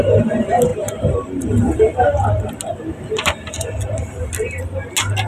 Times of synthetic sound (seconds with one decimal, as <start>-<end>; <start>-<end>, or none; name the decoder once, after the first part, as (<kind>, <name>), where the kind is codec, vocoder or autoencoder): none